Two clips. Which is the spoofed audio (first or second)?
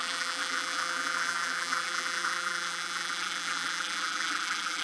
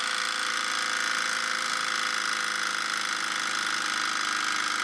first